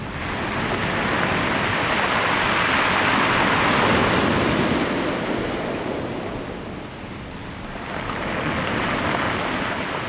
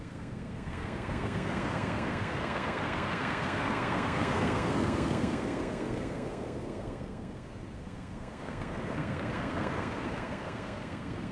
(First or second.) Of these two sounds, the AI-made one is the second